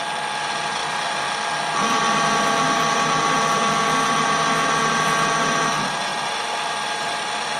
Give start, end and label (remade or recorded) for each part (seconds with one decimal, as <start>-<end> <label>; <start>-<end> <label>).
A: 0.0-7.6 recorded